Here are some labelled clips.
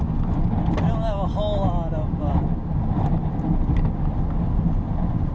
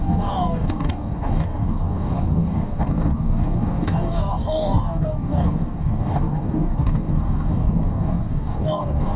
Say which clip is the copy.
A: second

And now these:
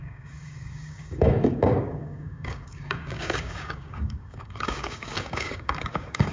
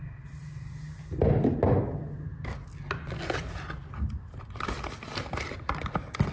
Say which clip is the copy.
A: first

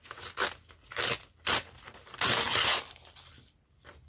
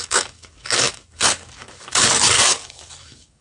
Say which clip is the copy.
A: second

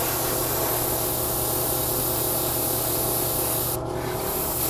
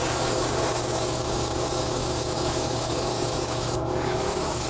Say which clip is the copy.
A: second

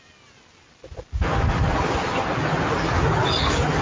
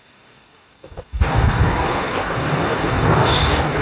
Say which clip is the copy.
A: second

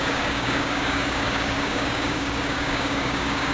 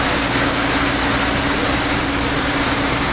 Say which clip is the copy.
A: first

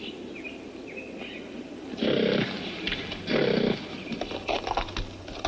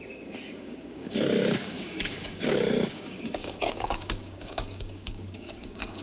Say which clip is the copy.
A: second